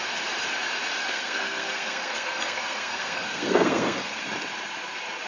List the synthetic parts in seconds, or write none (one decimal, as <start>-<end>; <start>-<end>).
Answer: 1.0-4.2